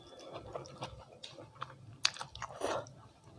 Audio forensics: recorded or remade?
recorded